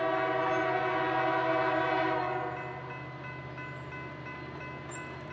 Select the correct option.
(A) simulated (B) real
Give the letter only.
B